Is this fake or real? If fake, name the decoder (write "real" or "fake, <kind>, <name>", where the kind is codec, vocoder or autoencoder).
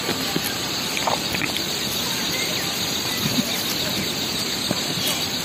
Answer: real